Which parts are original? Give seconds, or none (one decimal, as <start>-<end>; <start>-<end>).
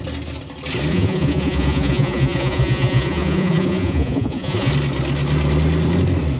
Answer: 0.0-0.9; 4.7-6.4